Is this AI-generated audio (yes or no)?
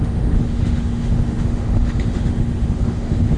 yes